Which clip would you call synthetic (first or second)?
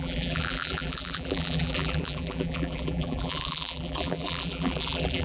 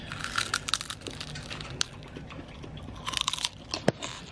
first